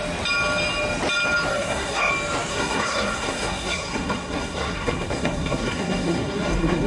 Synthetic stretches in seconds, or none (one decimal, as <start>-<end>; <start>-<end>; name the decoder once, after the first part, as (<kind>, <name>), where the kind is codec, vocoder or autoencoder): 1.5-2.1 (codec, SNAC); 2.5-6.9